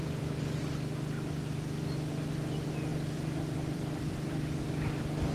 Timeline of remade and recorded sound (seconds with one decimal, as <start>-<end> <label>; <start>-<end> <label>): 0.0-0.6 remade; 0.6-2.9 recorded; 2.9-4.6 remade; 4.6-5.3 recorded